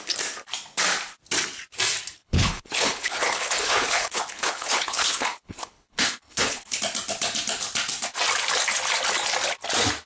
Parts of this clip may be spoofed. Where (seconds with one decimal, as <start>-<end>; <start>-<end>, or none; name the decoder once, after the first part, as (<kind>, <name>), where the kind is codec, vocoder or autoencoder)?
2.2-6.8 (codec, HILCodec)